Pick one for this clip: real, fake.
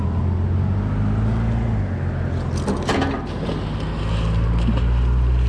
real